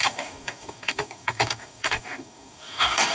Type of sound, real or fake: fake